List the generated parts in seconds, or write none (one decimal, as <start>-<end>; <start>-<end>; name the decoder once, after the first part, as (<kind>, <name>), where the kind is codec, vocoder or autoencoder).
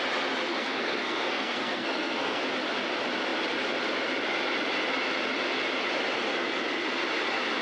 0.5-2.4 (codec, SNAC)